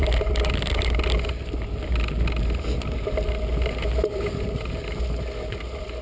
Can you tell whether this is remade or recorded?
recorded